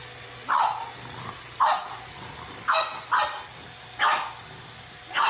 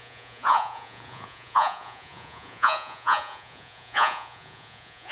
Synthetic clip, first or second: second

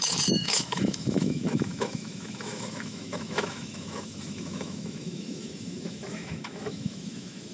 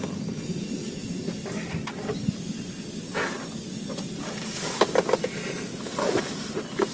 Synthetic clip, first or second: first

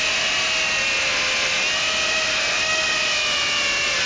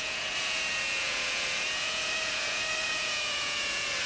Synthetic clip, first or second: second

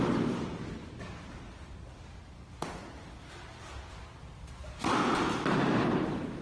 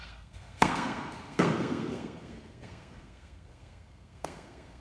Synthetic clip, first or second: second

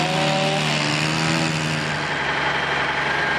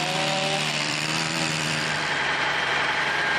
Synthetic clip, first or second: second